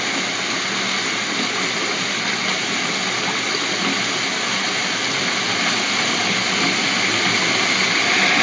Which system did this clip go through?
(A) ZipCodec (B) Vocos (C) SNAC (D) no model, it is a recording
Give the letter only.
D